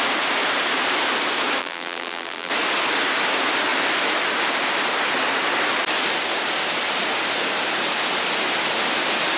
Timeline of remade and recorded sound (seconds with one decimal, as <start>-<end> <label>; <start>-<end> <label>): 0.0-1.6 recorded; 1.6-2.5 remade; 2.5-9.4 recorded